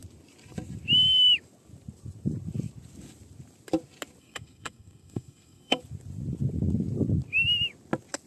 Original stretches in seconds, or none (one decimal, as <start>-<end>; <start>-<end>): 0.0-4.2; 5.8-8.3